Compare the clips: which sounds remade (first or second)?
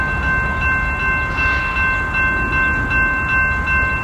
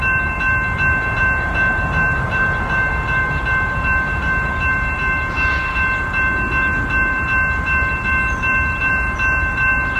second